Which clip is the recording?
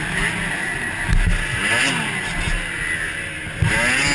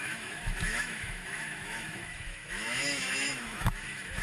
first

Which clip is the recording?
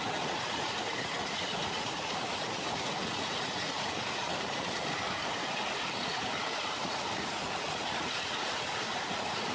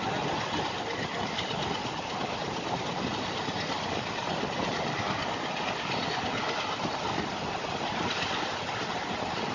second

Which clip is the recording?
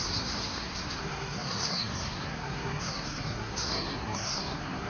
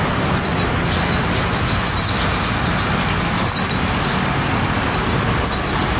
second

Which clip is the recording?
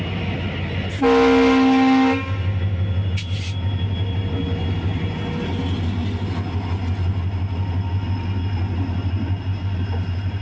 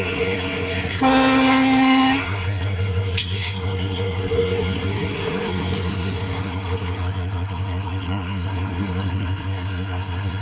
first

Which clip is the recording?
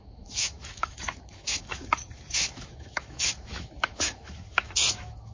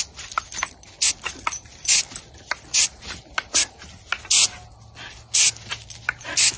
second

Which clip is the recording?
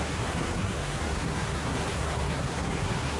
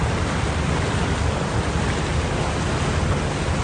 second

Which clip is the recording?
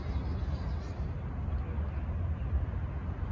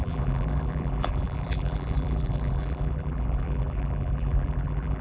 first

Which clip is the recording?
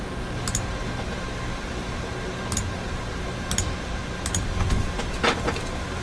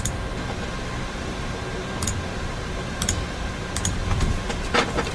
first